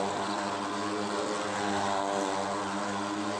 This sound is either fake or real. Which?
real